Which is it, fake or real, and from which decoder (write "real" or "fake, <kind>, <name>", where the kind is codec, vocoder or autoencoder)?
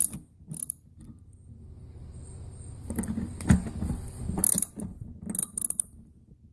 real